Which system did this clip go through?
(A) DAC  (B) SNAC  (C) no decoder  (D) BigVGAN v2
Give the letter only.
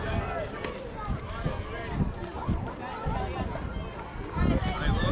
C